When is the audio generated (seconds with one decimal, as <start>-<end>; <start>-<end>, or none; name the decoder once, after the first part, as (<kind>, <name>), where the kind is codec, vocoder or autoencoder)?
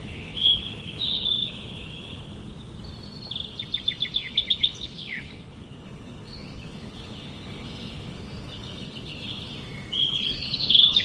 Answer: 0.0-2.4 (codec, HILCodec); 4.3-9.5; 10.0-11.0